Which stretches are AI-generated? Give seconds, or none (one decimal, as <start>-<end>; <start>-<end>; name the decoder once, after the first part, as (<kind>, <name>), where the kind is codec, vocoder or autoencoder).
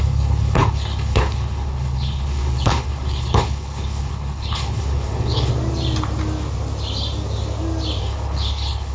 0.0-5.5 (codec, HILCodec); 8.0-8.9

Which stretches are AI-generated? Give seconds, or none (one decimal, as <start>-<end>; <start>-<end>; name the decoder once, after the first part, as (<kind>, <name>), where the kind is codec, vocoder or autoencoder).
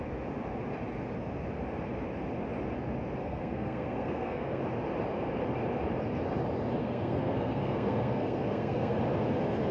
3.2-4.6 (codec, SNAC); 6.8-9.0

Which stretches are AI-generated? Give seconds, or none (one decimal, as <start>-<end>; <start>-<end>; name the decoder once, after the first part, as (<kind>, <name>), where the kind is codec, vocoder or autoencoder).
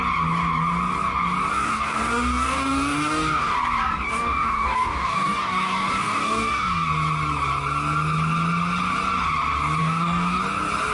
1.5-3.6 (codec, DAC); 4.1-6.9; 9.8-10.4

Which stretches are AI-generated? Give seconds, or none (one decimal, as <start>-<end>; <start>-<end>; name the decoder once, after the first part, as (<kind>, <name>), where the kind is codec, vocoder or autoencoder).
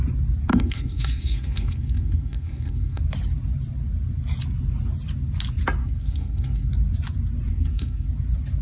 0.5-3.0 (codec, SNAC); 5.8-6.7; 7.5-8.1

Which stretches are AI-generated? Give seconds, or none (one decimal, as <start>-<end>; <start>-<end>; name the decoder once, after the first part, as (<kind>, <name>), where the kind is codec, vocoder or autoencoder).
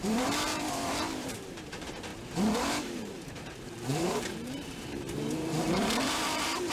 0.0-2.1 (vocoder, BigVGAN v2); 2.6-6.7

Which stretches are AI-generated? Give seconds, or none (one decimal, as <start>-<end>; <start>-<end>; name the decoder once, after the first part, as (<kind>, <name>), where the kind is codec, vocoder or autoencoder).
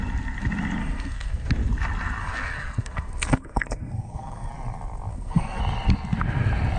0.8-1.5 (codec, SNAC); 2.2-4.5; 5.1-5.6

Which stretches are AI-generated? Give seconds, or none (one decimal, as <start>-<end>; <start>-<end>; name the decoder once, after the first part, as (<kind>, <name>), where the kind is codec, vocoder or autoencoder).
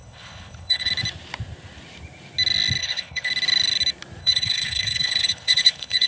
0.0-0.9 (codec, HILCodec); 2.8-3.3; 4.2-6.1